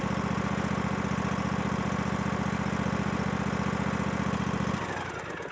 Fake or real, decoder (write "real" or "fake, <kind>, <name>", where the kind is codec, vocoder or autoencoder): real